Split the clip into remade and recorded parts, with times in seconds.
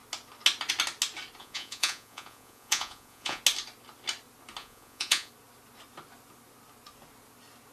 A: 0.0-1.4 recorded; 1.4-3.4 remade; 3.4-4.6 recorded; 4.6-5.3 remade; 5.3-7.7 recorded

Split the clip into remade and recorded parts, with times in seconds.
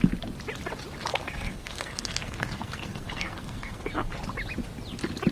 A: 0.0-1.1 recorded; 1.1-4.2 remade; 4.2-5.3 recorded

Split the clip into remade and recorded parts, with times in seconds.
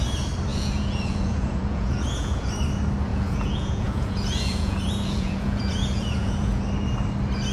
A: 0.0-0.5 recorded; 0.5-2.5 remade; 2.5-3.1 recorded; 3.1-6.6 remade; 6.6-7.5 recorded